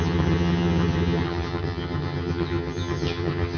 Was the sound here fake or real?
fake